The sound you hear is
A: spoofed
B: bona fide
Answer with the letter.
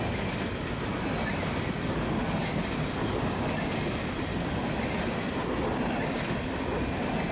B